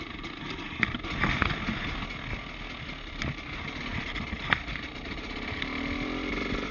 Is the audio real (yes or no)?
yes